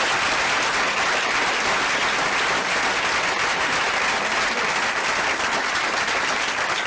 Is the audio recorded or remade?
recorded